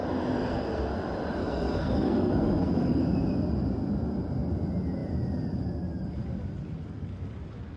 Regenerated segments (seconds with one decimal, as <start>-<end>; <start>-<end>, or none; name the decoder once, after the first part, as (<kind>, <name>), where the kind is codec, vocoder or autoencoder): 0.0-0.9 (codec, SNAC); 1.4-3.0